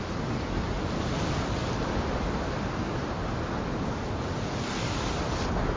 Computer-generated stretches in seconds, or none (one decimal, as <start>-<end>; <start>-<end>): none